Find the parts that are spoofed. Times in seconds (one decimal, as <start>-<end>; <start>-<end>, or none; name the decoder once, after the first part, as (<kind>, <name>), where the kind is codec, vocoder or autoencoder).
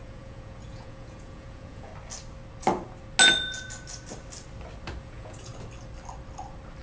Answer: 0.0-1.9 (vocoder, Vocos); 5.0-5.5